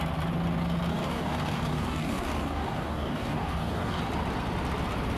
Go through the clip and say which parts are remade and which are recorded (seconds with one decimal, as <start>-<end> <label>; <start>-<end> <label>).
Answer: 0.0-0.9 recorded; 0.9-4.0 remade; 4.0-5.2 recorded